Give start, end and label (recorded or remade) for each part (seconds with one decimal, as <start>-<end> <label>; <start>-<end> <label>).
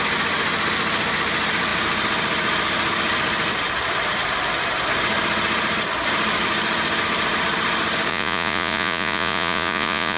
0.0-8.1 recorded; 8.1-10.2 remade